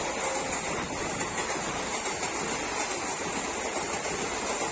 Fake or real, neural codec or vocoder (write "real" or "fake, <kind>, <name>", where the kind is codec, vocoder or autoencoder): real